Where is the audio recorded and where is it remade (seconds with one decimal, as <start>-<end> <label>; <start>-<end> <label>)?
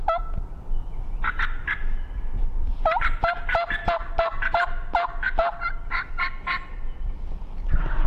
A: 0.0-8.1 recorded